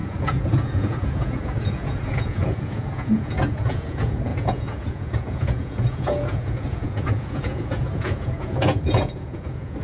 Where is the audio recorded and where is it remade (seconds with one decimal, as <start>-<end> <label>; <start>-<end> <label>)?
0.0-9.8 remade